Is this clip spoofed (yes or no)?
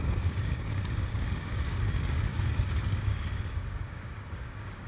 yes